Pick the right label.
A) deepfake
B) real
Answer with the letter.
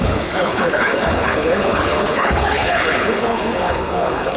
A